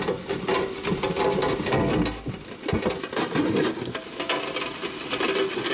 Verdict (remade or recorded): recorded